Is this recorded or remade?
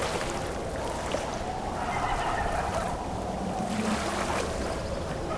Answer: recorded